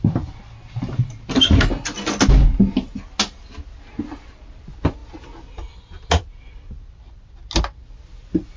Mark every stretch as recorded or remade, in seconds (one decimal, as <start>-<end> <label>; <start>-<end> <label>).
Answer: 0.0-8.6 recorded